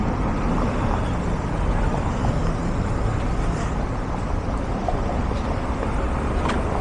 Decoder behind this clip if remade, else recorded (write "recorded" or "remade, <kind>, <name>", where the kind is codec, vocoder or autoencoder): recorded